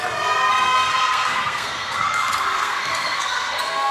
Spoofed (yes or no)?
yes